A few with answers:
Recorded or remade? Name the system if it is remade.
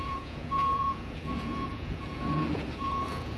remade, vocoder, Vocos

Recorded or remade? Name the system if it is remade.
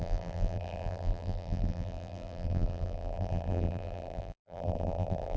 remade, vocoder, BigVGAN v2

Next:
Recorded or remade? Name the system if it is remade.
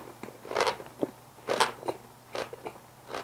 remade, vocoder, BigVGAN v2